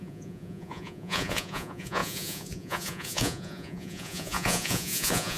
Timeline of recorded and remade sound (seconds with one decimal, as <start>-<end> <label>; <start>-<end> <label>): 0.0-5.4 remade